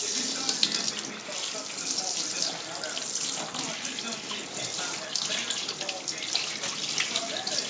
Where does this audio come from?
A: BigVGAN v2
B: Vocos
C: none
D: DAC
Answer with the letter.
C